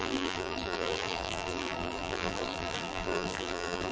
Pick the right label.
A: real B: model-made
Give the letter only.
B